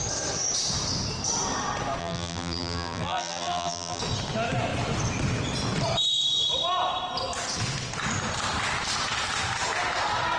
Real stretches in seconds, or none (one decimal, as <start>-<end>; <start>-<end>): 0.0-2.0; 4.0-10.4